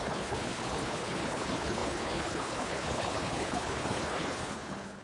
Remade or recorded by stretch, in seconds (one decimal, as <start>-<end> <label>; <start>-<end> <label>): 0.0-5.0 remade